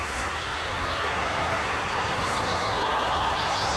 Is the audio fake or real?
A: fake